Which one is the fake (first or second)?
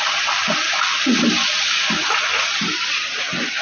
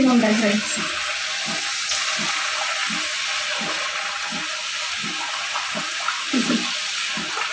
first